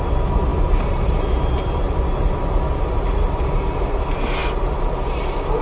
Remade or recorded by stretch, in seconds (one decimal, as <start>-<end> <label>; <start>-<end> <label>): 0.0-5.6 recorded